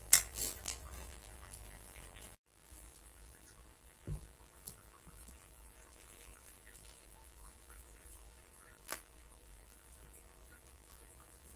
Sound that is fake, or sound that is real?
fake